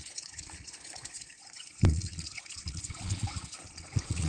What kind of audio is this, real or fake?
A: fake